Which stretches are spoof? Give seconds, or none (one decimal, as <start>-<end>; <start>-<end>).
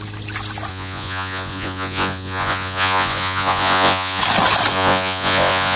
0.7-4.2; 4.7-5.8